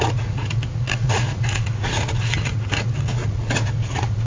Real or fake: fake